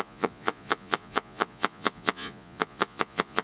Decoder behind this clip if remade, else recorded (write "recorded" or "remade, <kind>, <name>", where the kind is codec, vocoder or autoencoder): remade, vocoder, Vocos